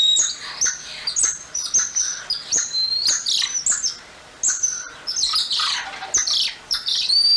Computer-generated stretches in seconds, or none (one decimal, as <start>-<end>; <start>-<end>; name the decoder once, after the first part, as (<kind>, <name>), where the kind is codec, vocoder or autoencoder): none